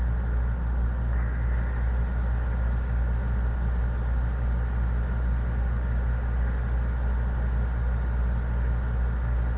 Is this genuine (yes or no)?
yes